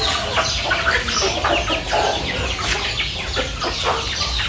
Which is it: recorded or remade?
recorded